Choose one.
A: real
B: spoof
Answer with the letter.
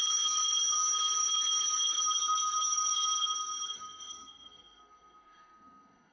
B